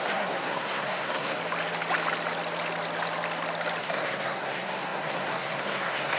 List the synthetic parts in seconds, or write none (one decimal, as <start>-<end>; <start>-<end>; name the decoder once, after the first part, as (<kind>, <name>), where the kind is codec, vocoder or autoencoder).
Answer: 0.0-1.4 (codec, SNAC); 3.8-6.2